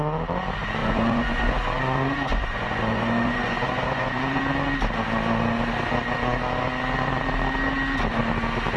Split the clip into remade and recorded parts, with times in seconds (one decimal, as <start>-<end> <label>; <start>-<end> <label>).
0.0-0.8 recorded; 0.8-4.4 remade; 4.4-8.8 recorded